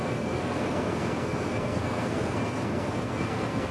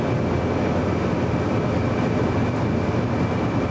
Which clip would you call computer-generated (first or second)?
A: first